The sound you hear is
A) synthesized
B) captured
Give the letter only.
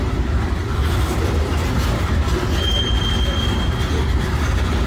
B